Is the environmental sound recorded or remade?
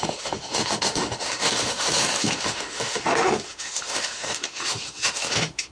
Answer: remade